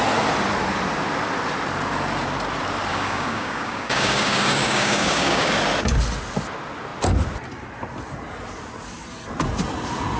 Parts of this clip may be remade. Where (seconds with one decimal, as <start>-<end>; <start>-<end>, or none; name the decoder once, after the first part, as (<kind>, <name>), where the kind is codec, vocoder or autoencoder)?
2.9-5.5 (codec, DAC)